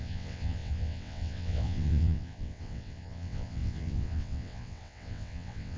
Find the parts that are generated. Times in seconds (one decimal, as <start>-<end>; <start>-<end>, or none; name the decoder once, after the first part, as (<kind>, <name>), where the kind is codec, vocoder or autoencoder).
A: 0.0-5.8 (vocoder, WaveNeXt)